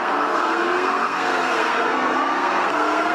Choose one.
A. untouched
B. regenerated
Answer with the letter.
B